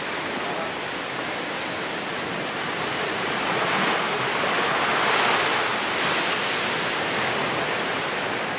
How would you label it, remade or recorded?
recorded